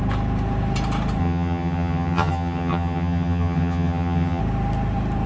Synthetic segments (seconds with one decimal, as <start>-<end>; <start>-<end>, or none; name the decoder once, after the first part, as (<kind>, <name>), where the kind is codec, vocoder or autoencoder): 1.2-4.4 (vocoder, HiFi-GAN)